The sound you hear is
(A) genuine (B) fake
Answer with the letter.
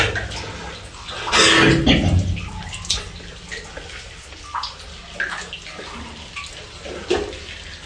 A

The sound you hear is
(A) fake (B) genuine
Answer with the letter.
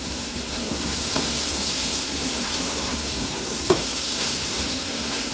A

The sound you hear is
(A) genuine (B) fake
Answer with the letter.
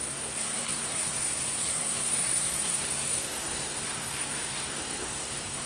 B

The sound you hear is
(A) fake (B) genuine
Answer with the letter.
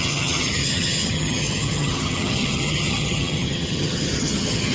A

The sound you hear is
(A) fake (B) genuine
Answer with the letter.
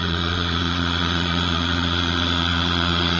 A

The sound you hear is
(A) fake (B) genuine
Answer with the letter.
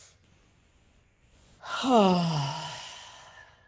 A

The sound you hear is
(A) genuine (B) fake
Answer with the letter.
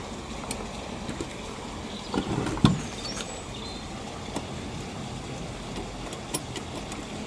A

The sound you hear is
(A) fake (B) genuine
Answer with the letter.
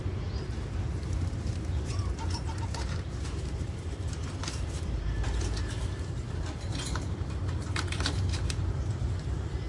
A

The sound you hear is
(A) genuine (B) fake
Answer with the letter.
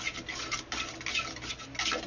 A